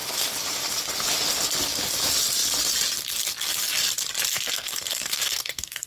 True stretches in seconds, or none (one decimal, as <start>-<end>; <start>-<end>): 0.0-4.3